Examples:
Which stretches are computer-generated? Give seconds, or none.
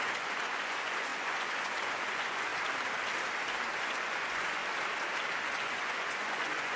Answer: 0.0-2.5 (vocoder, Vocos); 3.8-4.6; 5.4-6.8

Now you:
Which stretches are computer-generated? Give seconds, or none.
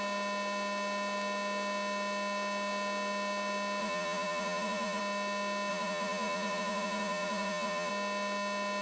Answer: 3.8-5.0 (vocoder, Vocos); 5.7-7.9